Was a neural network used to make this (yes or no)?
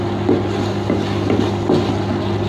no